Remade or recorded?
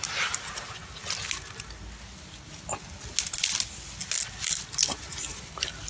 recorded